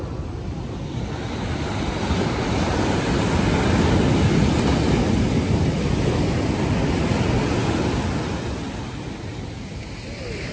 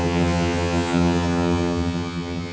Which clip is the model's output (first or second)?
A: second